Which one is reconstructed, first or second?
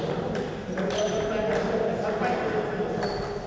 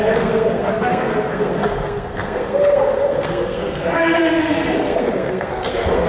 second